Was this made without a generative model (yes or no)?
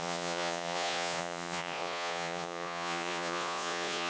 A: no